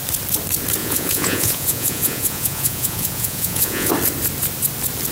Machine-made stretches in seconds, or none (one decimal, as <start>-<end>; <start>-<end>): 0.8-3.9